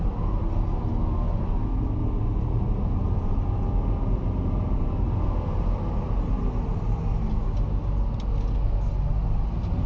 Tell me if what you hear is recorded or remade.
recorded